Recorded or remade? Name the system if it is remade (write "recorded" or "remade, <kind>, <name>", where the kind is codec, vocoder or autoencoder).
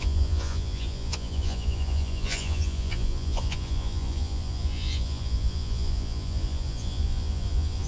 remade, vocoder, Vocos